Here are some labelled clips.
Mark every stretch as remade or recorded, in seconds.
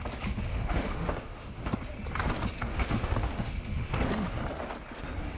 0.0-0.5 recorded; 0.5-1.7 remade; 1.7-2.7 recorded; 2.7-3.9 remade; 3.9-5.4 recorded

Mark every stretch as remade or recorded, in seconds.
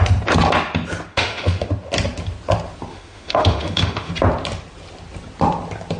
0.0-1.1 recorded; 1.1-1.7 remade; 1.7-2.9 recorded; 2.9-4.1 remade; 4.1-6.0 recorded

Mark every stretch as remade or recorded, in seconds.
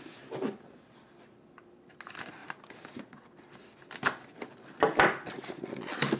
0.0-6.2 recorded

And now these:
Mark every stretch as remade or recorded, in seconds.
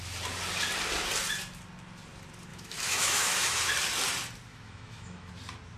0.0-2.5 recorded; 2.5-3.7 remade; 3.7-4.5 recorded; 4.5-5.3 remade; 5.3-5.8 recorded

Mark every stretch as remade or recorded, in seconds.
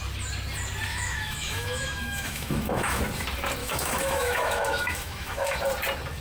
0.0-0.9 recorded; 0.9-3.0 remade; 3.0-3.6 recorded; 3.6-5.6 remade; 5.6-6.2 recorded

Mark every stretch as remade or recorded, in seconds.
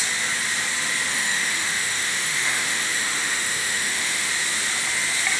0.0-1.1 recorded; 1.1-4.3 remade; 4.3-5.4 recorded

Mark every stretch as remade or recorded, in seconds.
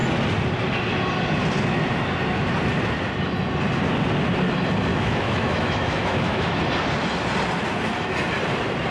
0.0-4.9 recorded; 4.9-6.6 remade; 6.6-8.9 recorded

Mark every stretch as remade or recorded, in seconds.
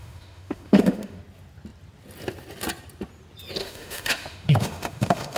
0.0-1.2 remade; 1.2-3.6 recorded; 3.6-5.4 remade